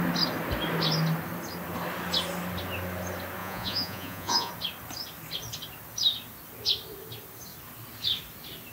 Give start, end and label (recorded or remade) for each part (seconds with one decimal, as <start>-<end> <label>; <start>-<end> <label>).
0.0-3.4 recorded; 3.4-4.5 remade; 4.5-8.7 recorded